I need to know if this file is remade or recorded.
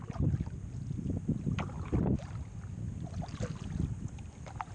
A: recorded